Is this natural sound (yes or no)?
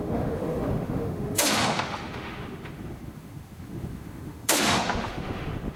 no